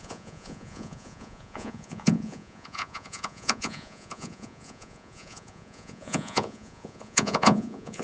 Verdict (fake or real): fake